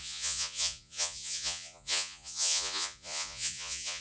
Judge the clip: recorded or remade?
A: remade